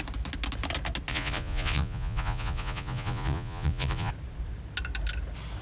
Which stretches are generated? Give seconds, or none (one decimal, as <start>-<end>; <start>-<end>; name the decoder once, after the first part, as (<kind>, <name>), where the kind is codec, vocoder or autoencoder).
1.1-4.1 (vocoder, Vocos)